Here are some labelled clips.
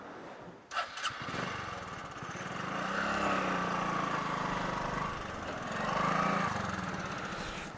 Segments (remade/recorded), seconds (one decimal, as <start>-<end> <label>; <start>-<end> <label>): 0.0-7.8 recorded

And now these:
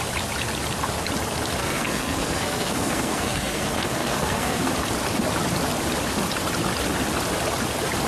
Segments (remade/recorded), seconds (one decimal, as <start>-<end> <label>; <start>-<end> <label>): 0.0-1.6 recorded; 1.6-4.7 remade; 4.7-8.1 recorded

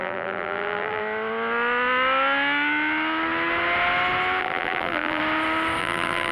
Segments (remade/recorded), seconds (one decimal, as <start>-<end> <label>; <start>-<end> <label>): 0.0-1.0 remade; 1.0-4.4 recorded; 4.4-5.2 remade; 5.2-5.8 recorded; 5.8-6.3 remade

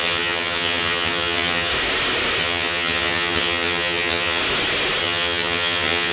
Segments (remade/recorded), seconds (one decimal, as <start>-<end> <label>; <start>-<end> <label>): 0.0-1.7 remade; 1.7-2.4 recorded; 2.4-4.4 remade; 4.4-5.0 recorded; 5.0-6.1 remade

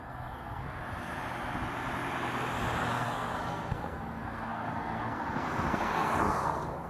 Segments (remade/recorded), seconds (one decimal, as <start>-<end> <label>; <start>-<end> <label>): 0.0-0.8 remade; 0.8-2.9 recorded; 2.9-6.9 remade

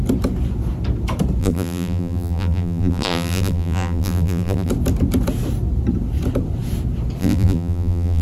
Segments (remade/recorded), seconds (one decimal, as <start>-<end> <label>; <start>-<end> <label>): 0.0-1.4 recorded; 1.4-4.7 remade; 4.7-7.2 recorded; 7.2-8.2 remade

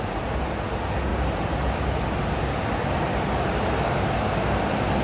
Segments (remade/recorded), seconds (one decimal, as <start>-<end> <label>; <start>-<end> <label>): 0.0-1.1 recorded; 1.1-3.4 remade; 3.4-5.0 recorded

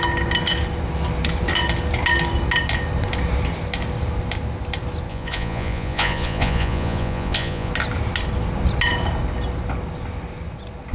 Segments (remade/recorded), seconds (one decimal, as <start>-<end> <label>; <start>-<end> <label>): 0.0-5.1 recorded; 5.1-7.7 remade; 7.7-10.9 recorded